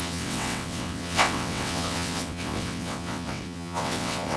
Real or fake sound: fake